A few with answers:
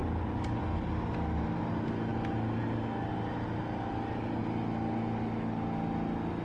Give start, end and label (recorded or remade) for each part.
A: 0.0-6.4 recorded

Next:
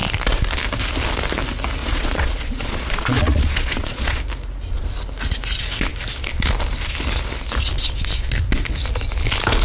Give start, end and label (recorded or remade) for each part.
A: 0.0-1.8 recorded; 1.8-4.2 remade; 4.2-9.6 recorded

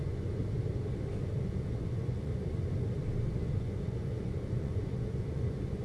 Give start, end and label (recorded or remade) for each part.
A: 0.0-0.4 remade; 0.4-1.3 recorded; 1.3-2.3 remade; 2.3-3.5 recorded; 3.5-5.8 remade

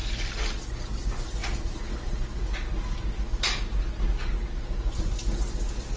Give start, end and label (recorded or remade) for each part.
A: 0.0-6.0 recorded

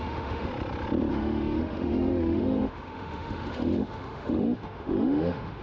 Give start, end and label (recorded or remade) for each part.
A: 0.0-0.5 remade; 0.5-1.1 recorded; 1.1-5.6 remade

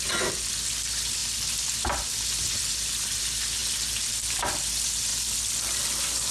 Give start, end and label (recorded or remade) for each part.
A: 0.0-6.3 recorded

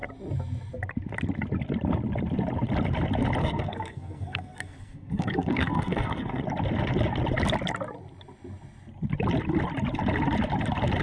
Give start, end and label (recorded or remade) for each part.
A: 0.0-3.4 recorded; 3.4-6.4 remade; 6.4-11.0 recorded

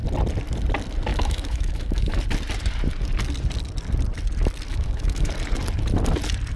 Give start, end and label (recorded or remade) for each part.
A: 0.0-1.1 recorded; 1.1-2.2 remade; 2.2-4.7 recorded; 4.7-5.3 remade; 5.3-6.6 recorded